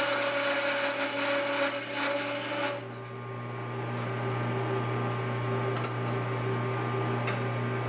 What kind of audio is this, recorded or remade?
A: recorded